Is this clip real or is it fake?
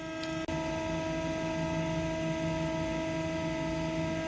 real